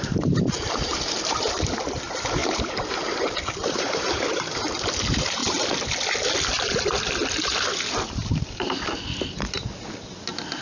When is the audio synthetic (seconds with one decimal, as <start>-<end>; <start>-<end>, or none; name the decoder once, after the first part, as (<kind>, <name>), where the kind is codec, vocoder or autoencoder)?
0.0-5.4 (vocoder, BigVGAN v2)

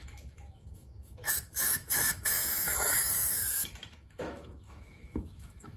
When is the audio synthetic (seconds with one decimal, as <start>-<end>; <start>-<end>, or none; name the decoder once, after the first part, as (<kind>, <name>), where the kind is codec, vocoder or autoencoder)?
0.0-5.8 (autoencoder, DAC-VAE)

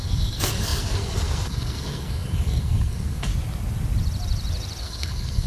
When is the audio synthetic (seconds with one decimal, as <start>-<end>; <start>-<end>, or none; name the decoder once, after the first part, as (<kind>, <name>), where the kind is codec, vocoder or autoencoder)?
0.0-3.3 (codec, SNAC); 4.8-5.5